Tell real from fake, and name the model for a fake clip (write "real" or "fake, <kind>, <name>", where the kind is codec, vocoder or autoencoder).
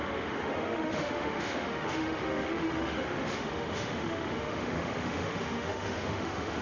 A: fake, autoencoder, DAC-VAE